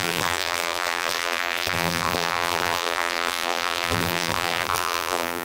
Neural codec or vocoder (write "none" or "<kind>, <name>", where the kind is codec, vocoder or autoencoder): vocoder, BigVGAN v2